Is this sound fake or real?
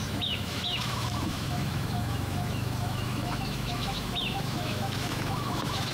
fake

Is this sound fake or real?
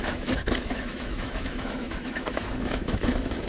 fake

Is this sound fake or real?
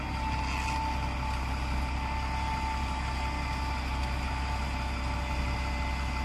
real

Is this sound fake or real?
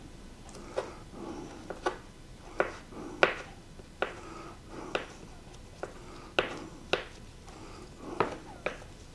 real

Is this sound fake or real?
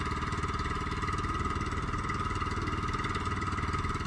real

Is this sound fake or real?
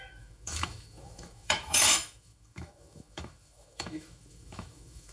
fake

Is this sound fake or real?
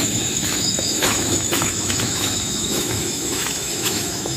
fake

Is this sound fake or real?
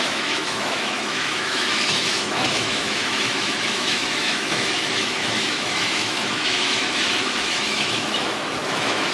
fake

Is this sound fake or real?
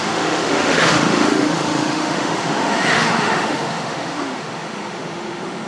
fake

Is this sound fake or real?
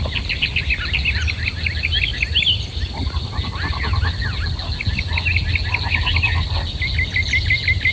real